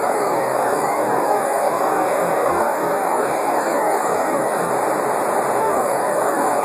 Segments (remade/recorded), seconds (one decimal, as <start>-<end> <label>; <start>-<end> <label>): 0.0-4.7 remade; 4.7-5.6 recorded; 5.6-6.6 remade